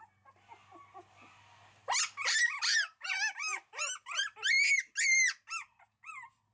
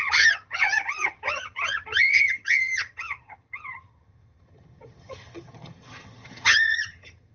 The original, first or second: first